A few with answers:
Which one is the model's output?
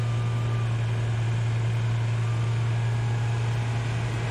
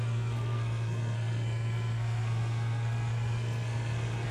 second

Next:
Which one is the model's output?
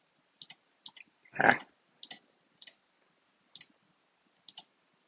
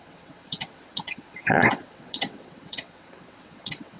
second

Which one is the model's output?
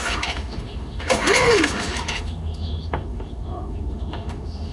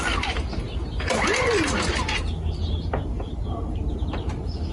first